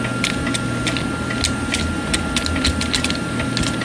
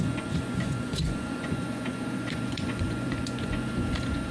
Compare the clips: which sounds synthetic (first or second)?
second